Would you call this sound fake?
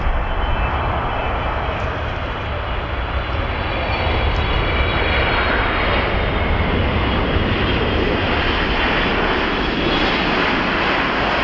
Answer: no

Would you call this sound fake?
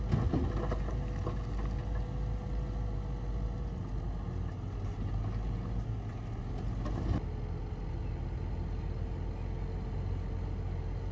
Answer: no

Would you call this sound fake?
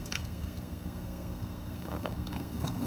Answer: yes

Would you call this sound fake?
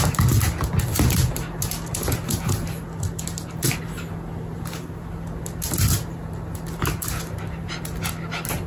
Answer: no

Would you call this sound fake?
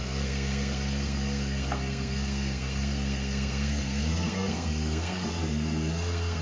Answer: yes